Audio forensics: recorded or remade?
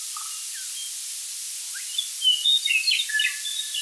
recorded